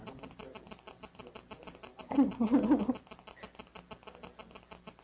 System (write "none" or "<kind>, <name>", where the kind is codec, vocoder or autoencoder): none